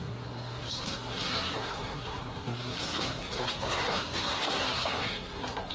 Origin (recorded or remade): remade